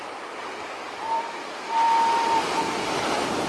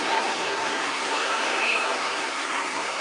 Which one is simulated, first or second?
second